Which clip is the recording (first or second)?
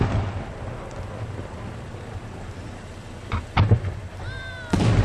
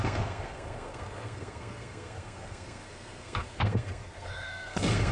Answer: first